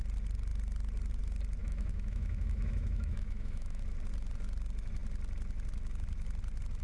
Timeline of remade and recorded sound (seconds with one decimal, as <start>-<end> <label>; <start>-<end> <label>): 0.0-1.6 recorded; 1.6-3.8 remade; 3.8-6.8 recorded